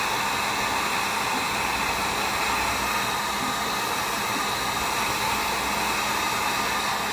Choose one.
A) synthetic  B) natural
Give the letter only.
B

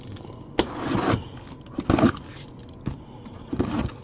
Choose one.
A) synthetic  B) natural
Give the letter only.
B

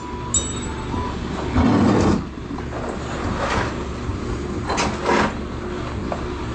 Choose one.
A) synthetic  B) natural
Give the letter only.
B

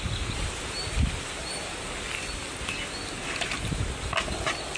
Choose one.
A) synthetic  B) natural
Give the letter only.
B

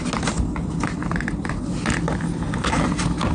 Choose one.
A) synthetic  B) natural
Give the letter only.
B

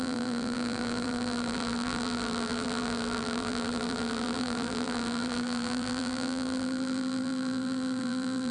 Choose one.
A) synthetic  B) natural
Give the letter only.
A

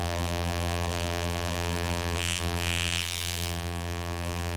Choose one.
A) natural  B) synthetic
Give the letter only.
B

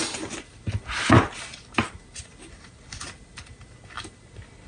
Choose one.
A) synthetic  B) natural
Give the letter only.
B